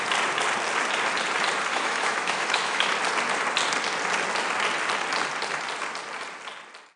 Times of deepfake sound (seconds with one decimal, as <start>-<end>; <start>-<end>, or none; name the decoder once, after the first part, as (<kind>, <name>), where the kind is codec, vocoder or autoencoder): 1.7-2.9 (autoencoder, DAC-VAE)